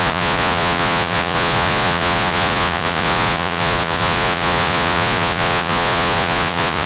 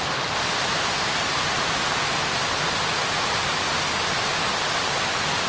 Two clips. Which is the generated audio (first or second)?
first